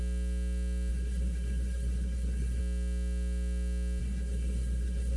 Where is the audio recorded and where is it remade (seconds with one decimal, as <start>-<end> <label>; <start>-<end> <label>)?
0.0-0.9 recorded; 0.9-2.6 remade; 2.6-4.0 recorded; 4.0-5.2 remade